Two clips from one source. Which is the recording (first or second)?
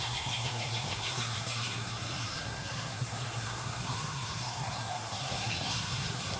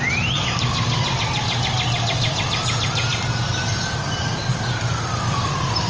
second